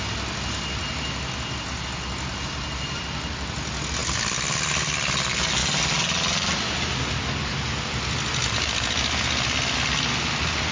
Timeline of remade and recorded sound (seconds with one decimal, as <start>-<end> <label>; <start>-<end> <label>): 0.0-10.7 recorded